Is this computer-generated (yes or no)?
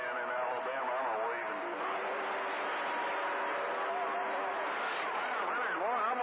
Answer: no